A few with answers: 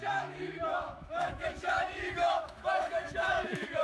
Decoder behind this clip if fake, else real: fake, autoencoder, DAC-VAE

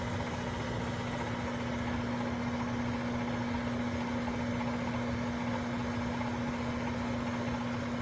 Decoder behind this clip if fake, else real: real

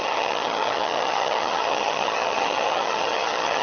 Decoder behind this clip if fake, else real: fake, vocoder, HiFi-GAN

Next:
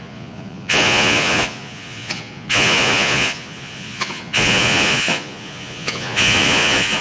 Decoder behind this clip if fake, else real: fake, vocoder, Vocos